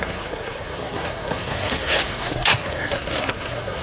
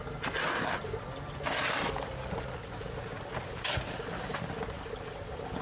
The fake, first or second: first